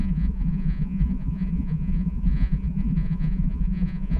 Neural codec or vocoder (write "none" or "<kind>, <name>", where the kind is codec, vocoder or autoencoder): vocoder, Vocos